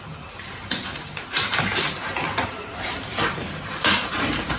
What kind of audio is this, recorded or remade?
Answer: remade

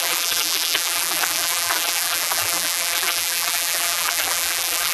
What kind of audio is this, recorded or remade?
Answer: remade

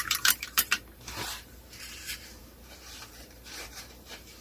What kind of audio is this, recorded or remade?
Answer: remade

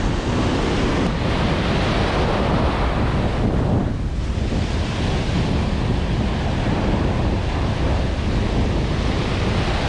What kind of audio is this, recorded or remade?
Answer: recorded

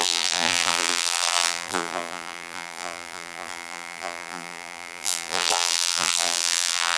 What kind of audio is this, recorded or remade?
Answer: remade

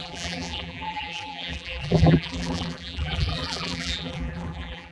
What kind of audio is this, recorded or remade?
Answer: remade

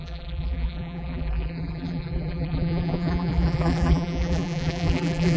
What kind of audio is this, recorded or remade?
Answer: remade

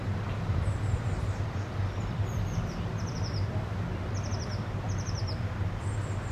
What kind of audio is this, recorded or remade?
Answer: remade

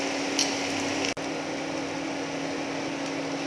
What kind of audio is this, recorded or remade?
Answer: recorded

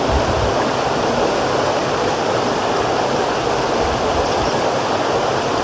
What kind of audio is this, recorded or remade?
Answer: recorded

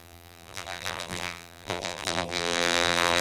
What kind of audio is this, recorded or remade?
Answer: remade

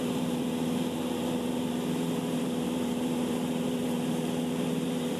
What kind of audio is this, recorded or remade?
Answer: remade